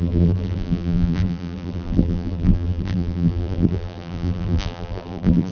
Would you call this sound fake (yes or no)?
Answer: yes